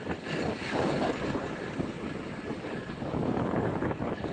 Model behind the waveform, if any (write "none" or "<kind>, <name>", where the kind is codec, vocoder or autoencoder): codec, DAC